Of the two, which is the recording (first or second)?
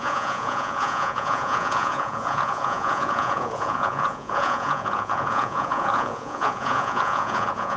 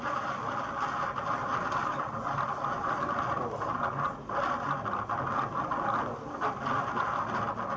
second